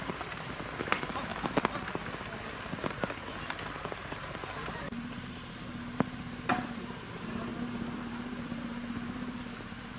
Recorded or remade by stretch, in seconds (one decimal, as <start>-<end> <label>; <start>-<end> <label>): 0.0-1.3 remade; 1.3-4.0 recorded; 4.0-10.0 remade